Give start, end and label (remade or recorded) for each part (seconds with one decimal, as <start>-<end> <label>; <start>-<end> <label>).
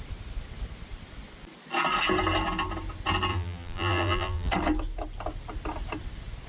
0.0-3.3 recorded; 3.3-4.5 remade; 4.5-6.5 recorded